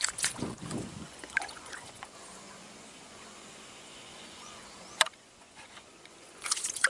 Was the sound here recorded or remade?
remade